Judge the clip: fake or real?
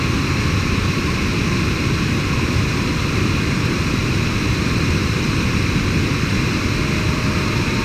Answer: real